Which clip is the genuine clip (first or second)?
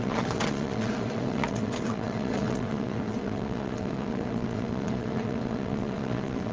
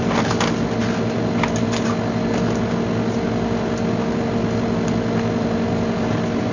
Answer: second